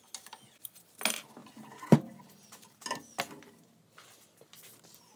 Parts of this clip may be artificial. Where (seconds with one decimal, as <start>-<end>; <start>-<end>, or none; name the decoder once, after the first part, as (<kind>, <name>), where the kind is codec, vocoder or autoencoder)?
none